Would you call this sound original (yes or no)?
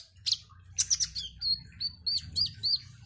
yes